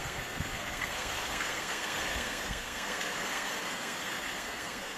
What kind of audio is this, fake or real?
fake